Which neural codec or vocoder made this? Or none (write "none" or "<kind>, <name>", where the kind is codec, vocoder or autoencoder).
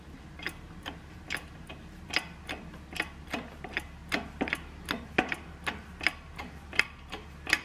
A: none